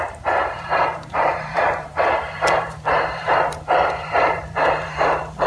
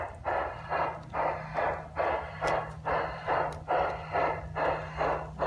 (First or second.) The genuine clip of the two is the second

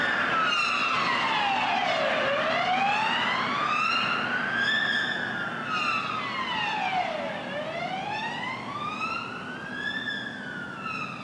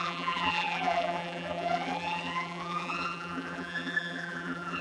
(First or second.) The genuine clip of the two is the first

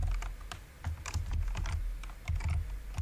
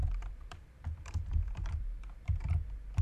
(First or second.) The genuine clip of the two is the first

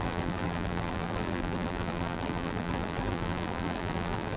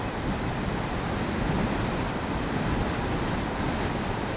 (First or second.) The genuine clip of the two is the second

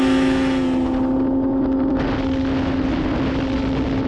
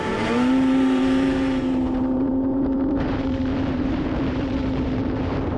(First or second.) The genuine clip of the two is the first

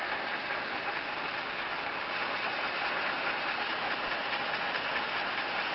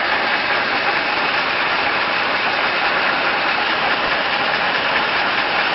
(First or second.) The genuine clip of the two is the first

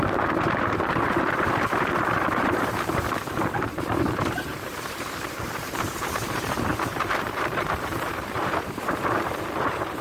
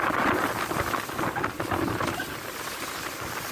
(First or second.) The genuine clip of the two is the second